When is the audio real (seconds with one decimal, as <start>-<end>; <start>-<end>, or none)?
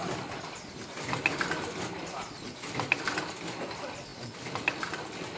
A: none